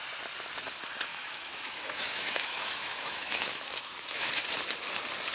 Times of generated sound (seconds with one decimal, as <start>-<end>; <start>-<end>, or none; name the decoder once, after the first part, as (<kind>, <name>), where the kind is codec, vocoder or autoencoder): 1.1-4.3 (autoencoder, DAC-VAE)